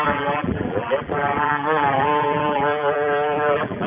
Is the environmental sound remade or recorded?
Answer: remade